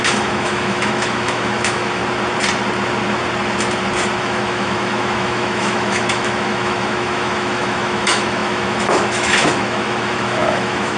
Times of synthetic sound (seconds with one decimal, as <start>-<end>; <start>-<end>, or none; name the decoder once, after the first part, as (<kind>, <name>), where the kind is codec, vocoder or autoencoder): 0.0-2.0 (autoencoder, DAC-VAE); 4.2-11.0

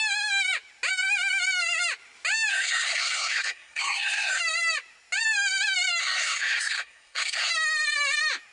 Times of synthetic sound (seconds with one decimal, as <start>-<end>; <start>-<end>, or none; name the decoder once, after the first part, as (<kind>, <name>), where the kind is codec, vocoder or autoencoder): 2.5-4.4 (codec, SNAC); 6.0-7.5

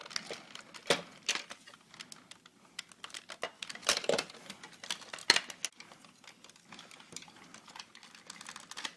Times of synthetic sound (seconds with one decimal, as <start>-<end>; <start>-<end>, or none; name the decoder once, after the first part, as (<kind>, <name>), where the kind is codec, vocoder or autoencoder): 3.8-4.4 (vocoder, BigVGAN v2)

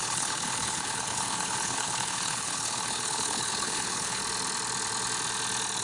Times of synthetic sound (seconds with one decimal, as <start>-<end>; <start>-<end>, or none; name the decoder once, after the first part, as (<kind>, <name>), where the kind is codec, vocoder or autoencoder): 0.0-4.2 (codec, HILCodec)

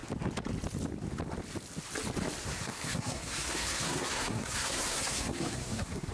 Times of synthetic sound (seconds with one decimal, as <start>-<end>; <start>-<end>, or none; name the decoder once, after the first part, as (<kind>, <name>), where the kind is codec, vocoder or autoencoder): 2.4-6.1 (codec, SNAC)